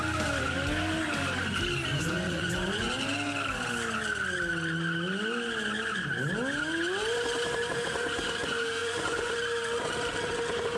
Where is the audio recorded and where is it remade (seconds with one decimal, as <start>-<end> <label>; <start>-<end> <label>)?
0.0-1.9 recorded; 1.9-2.9 remade; 2.9-8.8 recorded; 8.8-9.3 remade; 9.3-10.8 recorded